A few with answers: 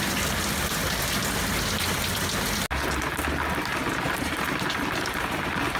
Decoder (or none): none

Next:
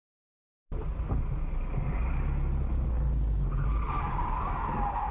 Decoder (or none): none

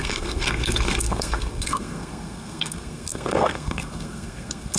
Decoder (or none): codec, SNAC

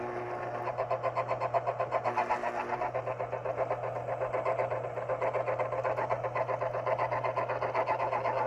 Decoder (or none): none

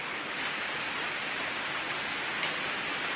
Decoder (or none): none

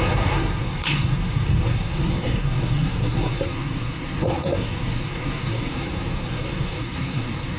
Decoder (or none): codec, SNAC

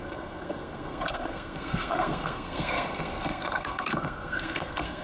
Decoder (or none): codec, SNAC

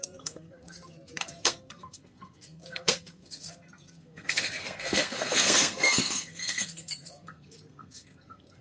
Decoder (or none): codec, SNAC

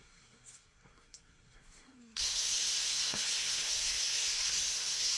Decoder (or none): codec, SNAC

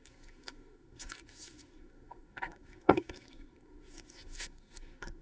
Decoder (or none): codec, SNAC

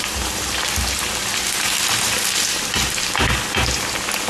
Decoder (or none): none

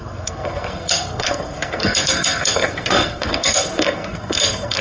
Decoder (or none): codec, SNAC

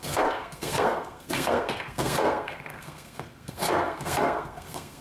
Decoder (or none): codec, SNAC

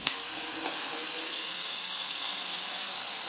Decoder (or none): codec, SNAC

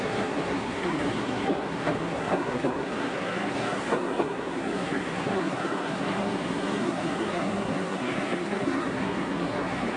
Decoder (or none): codec, SNAC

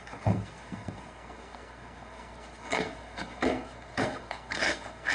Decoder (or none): codec, SNAC